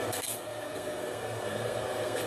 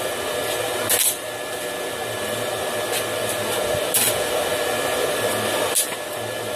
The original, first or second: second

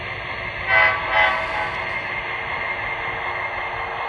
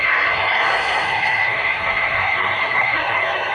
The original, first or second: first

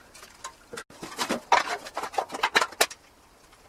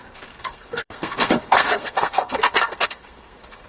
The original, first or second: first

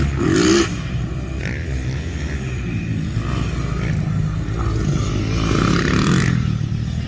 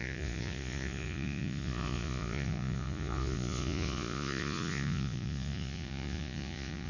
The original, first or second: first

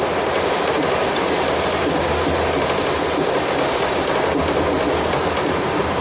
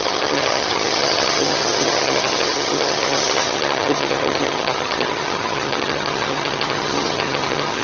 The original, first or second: first